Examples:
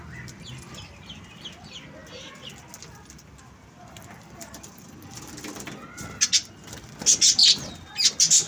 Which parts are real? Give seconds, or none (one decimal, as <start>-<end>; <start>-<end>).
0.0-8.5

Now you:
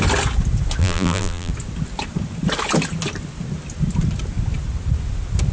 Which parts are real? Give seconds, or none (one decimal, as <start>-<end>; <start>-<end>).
0.0-0.8; 1.5-5.5

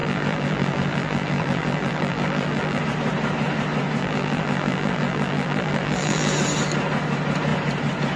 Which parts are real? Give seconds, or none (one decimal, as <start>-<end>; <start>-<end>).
2.8-4.0; 6.3-8.2

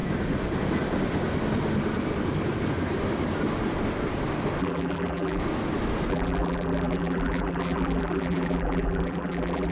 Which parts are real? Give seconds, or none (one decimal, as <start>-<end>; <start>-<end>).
0.0-4.6; 5.4-6.1